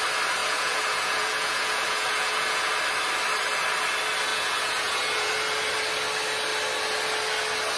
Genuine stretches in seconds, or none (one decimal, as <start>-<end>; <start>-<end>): 0.0-0.4; 2.7-4.3; 5.3-7.8